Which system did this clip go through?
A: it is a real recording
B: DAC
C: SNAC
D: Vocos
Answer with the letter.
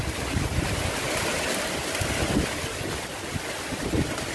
A